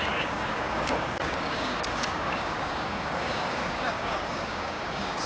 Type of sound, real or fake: fake